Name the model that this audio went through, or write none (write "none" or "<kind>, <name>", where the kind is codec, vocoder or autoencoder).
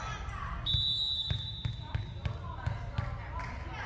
none